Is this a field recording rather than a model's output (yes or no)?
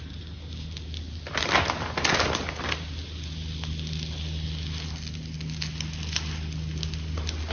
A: yes